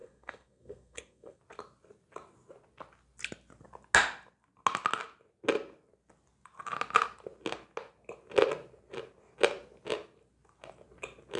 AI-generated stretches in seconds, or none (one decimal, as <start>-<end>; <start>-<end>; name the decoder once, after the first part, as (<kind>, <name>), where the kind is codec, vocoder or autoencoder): 0.0-1.4 (codec, SNAC)